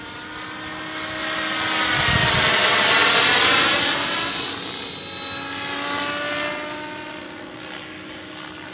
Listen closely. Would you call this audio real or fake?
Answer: real